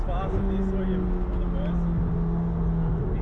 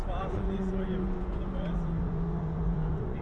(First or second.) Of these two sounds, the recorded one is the first